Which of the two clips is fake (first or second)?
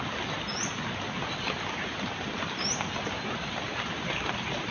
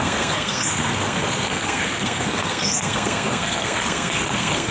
second